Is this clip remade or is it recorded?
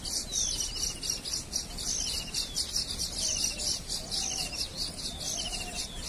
recorded